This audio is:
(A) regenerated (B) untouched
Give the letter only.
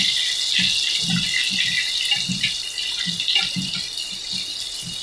B